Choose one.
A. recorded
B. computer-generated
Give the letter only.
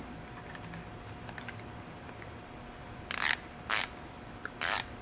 A